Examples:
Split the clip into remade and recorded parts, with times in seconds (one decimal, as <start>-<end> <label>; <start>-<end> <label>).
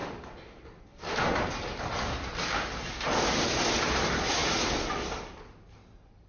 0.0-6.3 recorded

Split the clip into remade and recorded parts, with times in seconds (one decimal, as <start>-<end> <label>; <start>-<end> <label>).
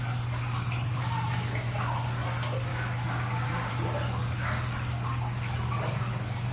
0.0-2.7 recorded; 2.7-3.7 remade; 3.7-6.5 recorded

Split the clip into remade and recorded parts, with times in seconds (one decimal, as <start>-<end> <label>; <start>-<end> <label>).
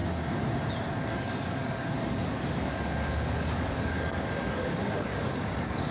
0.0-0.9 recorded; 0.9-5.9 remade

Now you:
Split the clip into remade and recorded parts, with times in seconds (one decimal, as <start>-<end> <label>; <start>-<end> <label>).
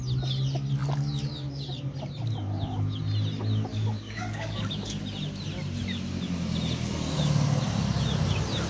0.0-3.7 recorded; 3.7-5.0 remade; 5.0-8.7 recorded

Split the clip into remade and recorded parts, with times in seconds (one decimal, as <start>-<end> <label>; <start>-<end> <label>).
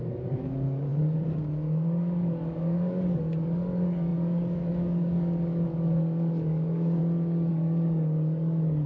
0.0-7.0 remade; 7.0-7.5 recorded; 7.5-8.9 remade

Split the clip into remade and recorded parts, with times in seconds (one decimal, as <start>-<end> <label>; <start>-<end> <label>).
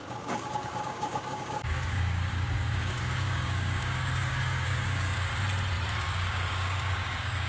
0.0-5.3 remade; 5.3-6.0 recorded; 6.0-7.5 remade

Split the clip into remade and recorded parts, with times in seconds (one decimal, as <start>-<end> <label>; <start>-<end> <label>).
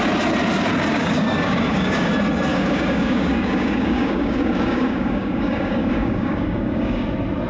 0.0-0.9 recorded; 0.9-2.1 remade; 2.1-2.5 recorded; 2.5-7.0 remade; 7.0-7.5 recorded